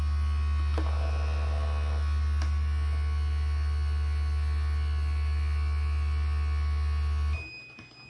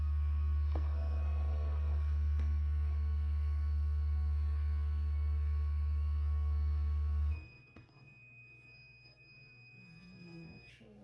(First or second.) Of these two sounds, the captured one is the first